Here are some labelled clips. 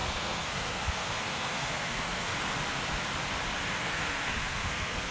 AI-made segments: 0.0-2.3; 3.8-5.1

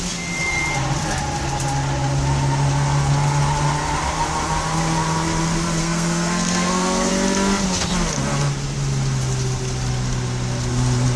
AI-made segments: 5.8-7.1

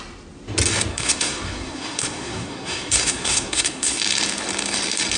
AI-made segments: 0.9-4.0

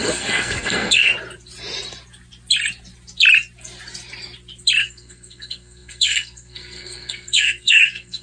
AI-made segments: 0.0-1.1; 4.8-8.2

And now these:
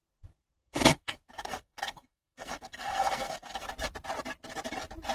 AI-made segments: 0.6-3.7

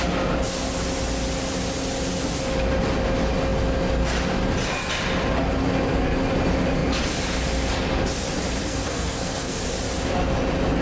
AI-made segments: 8.6-9.6

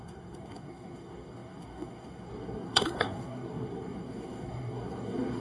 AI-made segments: 0.0-5.4